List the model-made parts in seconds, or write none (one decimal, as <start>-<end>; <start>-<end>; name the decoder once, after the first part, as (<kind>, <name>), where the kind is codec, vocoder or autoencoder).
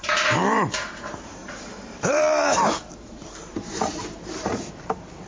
0.0-5.3 (vocoder, BigVGAN v2)